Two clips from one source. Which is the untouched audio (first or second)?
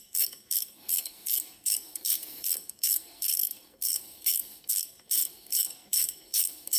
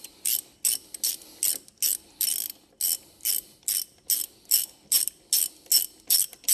second